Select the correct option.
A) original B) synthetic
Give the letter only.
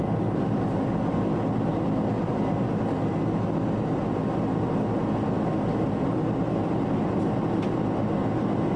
A